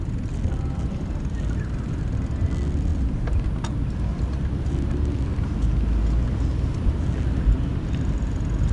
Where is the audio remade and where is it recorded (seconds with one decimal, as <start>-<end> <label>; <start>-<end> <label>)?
0.0-8.7 recorded